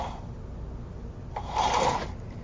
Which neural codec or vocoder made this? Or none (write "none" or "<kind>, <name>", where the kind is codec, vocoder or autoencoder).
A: none